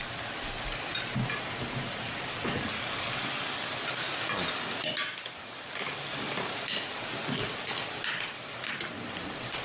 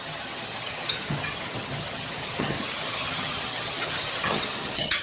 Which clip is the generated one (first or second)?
second